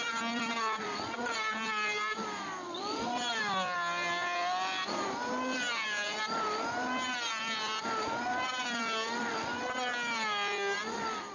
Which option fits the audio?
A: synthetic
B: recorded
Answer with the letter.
B